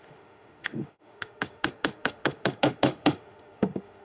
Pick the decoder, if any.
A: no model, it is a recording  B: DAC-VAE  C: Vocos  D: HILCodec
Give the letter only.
B